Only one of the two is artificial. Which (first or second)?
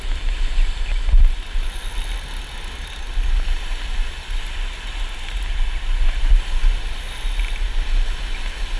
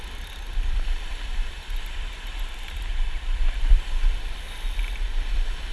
second